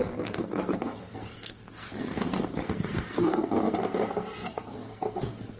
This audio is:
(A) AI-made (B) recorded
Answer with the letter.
A